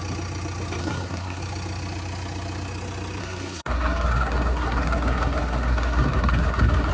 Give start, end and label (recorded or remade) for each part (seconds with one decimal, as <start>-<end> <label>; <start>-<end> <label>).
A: 0.0-0.8 recorded; 0.8-1.4 remade; 1.4-3.2 recorded; 3.2-6.9 remade